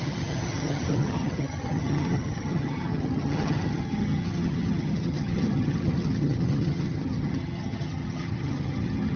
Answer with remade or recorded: remade